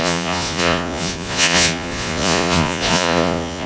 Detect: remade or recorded remade